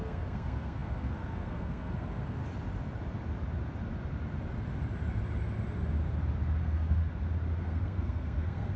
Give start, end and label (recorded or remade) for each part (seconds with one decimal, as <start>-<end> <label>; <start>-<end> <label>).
0.0-2.4 remade; 2.4-6.6 recorded; 6.6-7.0 remade; 7.0-7.6 recorded; 7.6-8.8 remade